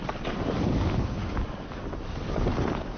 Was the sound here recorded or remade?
recorded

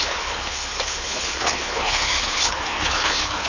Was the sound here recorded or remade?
remade